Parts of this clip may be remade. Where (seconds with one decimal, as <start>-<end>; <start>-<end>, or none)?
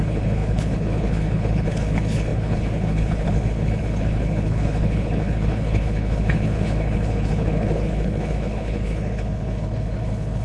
0.0-10.4